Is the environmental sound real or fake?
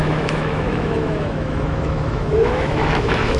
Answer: fake